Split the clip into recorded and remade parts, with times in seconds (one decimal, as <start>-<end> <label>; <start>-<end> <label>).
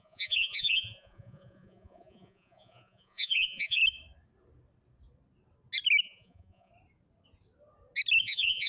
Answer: 0.0-3.8 remade; 3.8-6.0 recorded; 6.0-6.7 remade; 6.7-8.2 recorded; 8.2-8.7 remade